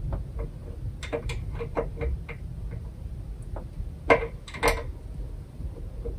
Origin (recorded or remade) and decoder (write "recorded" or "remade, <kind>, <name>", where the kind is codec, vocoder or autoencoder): recorded